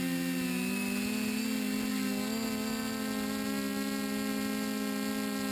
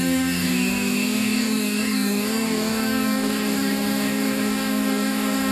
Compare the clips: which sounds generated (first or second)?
second